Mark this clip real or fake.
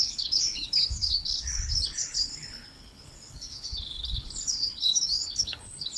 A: fake